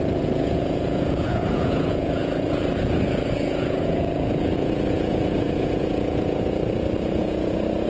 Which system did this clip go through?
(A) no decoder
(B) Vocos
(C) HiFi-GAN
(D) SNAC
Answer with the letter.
B